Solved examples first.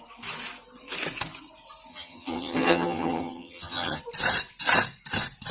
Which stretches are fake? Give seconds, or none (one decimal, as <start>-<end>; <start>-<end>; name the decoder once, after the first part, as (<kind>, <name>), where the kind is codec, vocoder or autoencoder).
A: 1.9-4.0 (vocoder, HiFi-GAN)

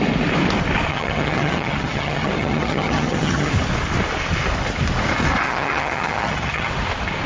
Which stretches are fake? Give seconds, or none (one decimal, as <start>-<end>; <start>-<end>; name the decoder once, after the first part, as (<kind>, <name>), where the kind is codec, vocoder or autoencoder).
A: 0.9-3.5 (vocoder, HiFi-GAN); 5.4-6.7

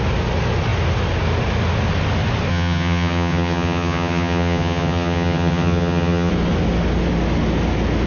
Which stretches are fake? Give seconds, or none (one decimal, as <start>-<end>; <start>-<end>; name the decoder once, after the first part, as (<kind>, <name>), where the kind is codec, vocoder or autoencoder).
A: 2.5-6.3 (vocoder, HiFi-GAN)

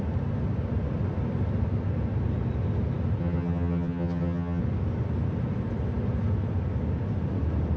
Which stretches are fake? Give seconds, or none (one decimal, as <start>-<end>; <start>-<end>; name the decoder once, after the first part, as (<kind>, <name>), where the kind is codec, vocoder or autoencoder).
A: 3.2-4.6 (vocoder, HiFi-GAN)

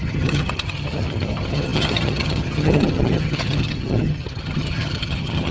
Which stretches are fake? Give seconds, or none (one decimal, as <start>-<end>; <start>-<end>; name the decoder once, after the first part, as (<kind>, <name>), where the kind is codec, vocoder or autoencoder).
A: 0.0-5.5 (vocoder, HiFi-GAN)

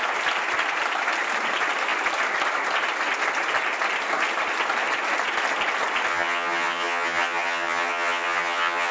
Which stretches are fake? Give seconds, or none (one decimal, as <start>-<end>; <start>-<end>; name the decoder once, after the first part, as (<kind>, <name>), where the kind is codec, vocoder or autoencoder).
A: 6.1-8.9 (vocoder, HiFi-GAN)

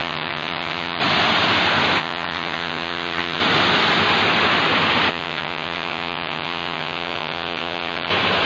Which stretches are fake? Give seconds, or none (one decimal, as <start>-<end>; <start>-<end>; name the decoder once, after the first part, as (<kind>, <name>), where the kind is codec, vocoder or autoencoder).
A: 0.0-1.0 (vocoder, HiFi-GAN); 2.0-3.4; 5.1-8.1

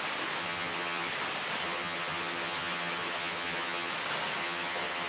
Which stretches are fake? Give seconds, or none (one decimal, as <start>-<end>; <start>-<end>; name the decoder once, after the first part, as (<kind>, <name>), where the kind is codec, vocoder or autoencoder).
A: 0.4-1.1 (vocoder, HiFi-GAN); 1.6-3.9; 4.4-5.1